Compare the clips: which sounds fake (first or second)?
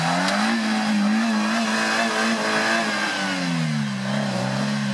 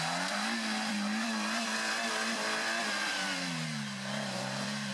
second